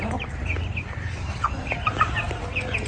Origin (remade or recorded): recorded